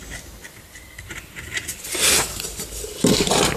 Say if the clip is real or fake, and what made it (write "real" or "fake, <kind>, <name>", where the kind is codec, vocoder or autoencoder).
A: real